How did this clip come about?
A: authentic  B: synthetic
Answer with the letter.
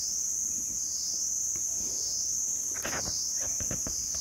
A